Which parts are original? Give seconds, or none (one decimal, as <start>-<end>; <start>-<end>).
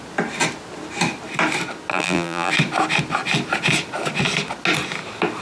0.0-1.9; 2.5-5.4